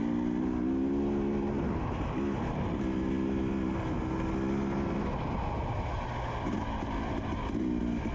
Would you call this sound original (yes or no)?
yes